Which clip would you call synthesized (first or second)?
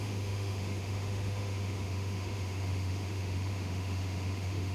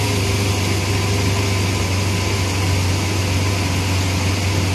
first